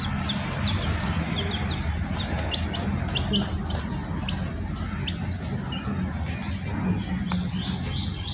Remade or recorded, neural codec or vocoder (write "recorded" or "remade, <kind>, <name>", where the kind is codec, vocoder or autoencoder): recorded